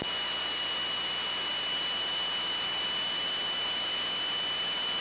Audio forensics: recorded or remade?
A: recorded